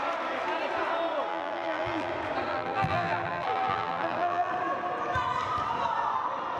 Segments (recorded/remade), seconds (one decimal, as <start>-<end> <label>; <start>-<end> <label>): 0.0-1.3 recorded; 1.3-2.1 remade; 2.1-2.5 recorded; 2.5-4.5 remade; 4.5-6.6 recorded